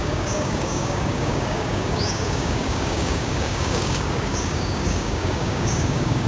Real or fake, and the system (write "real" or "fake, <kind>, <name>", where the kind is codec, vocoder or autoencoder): fake, codec, DAC